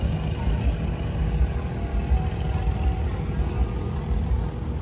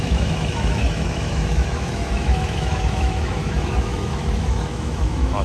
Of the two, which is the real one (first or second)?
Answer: first